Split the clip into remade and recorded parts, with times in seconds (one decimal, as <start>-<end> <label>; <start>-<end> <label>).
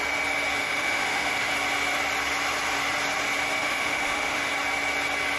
0.0-0.6 recorded; 0.6-1.5 remade; 1.5-3.6 recorded; 3.6-4.5 remade; 4.5-5.4 recorded